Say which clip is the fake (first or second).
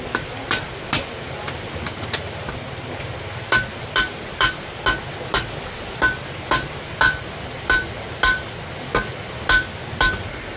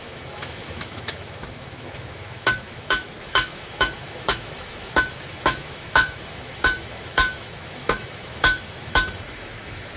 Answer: second